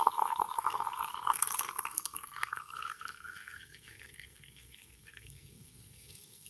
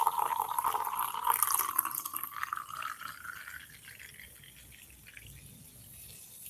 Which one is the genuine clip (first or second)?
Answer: second